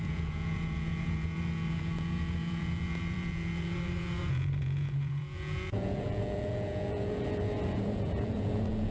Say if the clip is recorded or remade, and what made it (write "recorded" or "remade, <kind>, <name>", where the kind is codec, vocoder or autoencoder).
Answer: remade, vocoder, Vocos